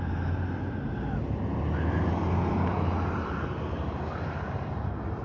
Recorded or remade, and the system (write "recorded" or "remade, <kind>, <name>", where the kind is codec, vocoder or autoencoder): recorded